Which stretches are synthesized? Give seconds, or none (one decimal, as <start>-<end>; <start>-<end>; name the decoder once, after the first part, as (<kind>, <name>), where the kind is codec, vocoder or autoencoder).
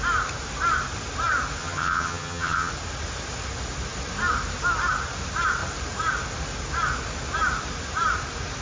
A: 1.6-2.7 (vocoder, HiFi-GAN)